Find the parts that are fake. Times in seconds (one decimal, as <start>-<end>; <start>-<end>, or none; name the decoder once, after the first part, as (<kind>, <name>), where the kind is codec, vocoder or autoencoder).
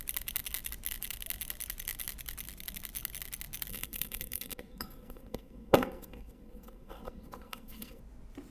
3.7-8.0 (codec, SNAC)